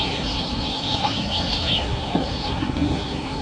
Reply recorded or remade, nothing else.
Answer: remade